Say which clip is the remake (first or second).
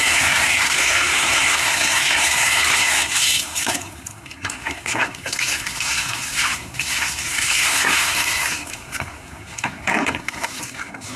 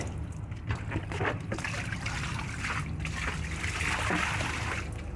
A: first